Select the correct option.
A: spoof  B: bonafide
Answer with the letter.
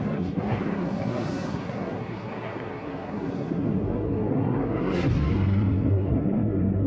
A